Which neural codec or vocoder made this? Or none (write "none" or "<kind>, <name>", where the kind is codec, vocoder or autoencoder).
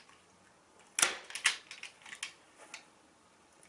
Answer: none